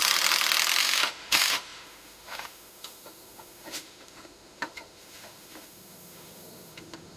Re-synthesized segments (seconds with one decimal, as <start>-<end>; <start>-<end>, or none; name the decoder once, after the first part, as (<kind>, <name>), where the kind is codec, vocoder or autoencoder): 0.8-7.2 (autoencoder, DAC-VAE)